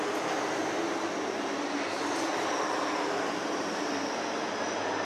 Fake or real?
real